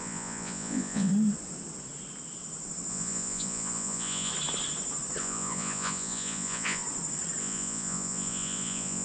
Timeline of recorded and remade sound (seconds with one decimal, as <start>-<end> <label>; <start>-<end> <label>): 0.0-1.1 remade; 1.1-2.9 recorded; 2.9-4.3 remade; 4.3-5.2 recorded; 5.2-6.8 remade; 6.8-7.4 recorded; 7.4-9.0 remade